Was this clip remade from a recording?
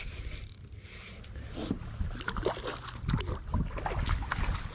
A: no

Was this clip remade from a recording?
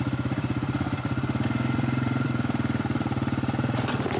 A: yes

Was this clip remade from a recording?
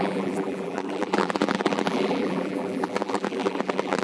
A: yes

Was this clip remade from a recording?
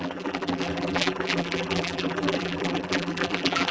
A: yes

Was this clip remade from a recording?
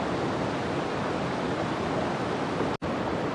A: no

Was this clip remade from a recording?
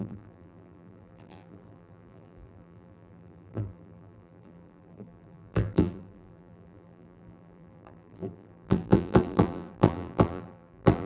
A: yes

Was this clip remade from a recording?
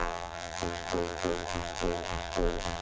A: yes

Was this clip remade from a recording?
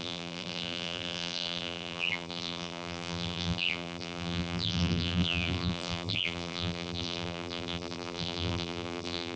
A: yes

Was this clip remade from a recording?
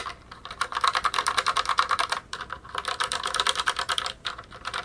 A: yes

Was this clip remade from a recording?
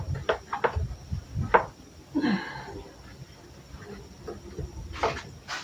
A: no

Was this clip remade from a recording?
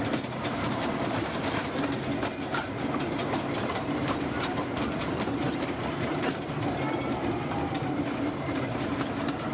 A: yes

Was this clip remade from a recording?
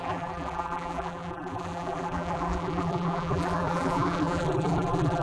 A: yes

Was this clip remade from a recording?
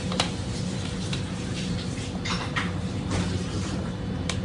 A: yes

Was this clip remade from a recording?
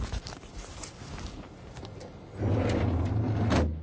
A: no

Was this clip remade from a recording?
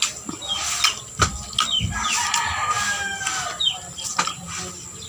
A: no